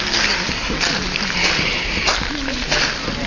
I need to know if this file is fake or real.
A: real